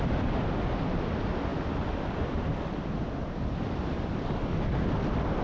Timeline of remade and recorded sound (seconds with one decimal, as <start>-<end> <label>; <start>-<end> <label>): 0.0-5.4 recorded